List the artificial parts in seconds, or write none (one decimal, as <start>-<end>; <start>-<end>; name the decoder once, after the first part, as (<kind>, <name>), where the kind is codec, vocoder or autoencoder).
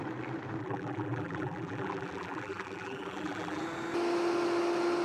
0.6-3.6 (vocoder, BigVGAN v2)